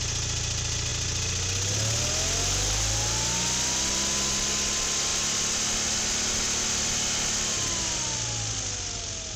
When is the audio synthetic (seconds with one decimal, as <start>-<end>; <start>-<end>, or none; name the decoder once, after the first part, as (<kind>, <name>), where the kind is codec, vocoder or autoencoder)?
none